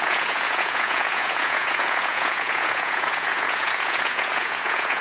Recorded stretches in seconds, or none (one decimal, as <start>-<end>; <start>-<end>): none